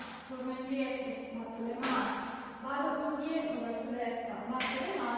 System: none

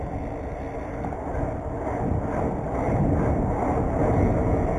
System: none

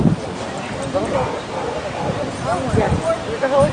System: none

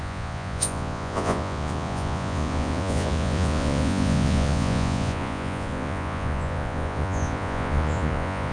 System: vocoder, Vocos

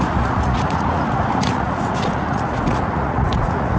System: vocoder, Vocos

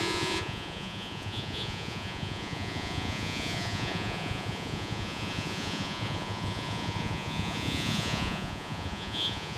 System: vocoder, Vocos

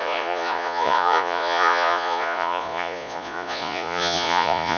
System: vocoder, Vocos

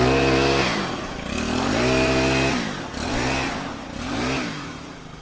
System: none